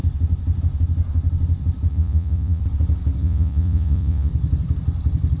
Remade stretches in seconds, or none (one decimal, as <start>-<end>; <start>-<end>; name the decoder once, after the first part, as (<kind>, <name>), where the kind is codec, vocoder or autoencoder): 1.9-2.6 (vocoder, Vocos); 3.2-4.3